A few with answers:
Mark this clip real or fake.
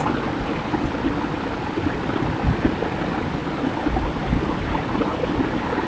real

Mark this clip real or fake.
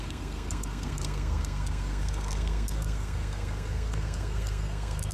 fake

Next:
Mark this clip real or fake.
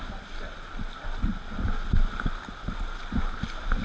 real